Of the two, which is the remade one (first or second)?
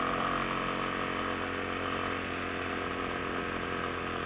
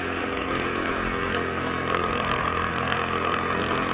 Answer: second